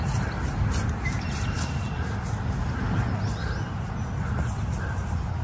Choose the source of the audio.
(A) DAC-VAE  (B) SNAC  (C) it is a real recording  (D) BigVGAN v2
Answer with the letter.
C